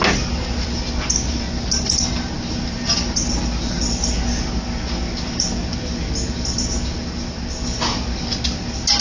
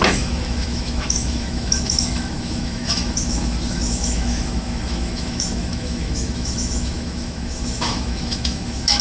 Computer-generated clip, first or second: second